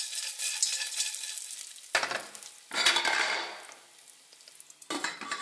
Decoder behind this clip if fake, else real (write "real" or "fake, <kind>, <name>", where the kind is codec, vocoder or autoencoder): real